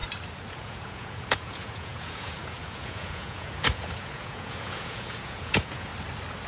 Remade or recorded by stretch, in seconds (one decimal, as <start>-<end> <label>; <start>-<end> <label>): 0.0-0.5 recorded; 0.5-5.9 remade; 5.9-6.5 recorded